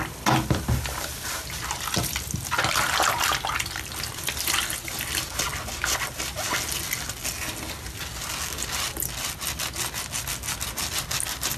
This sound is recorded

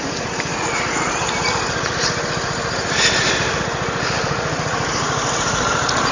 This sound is recorded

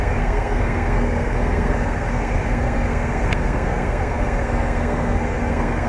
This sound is remade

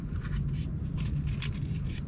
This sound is recorded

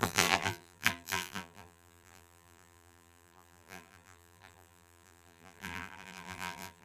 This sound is remade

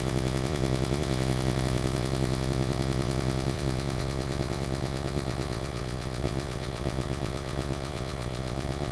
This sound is remade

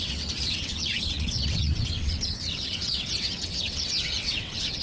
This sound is remade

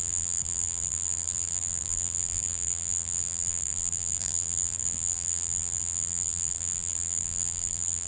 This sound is remade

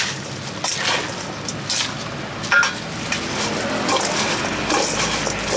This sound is recorded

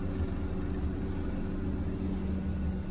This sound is recorded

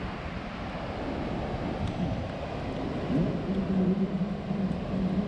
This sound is recorded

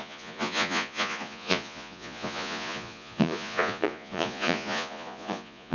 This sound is remade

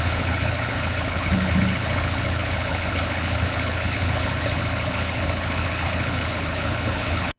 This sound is remade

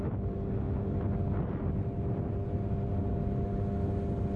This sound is recorded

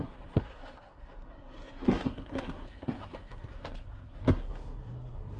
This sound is remade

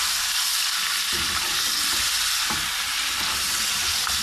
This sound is recorded